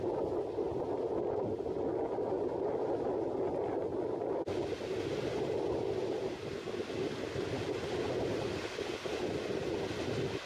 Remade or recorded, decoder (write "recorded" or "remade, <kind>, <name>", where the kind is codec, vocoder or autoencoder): recorded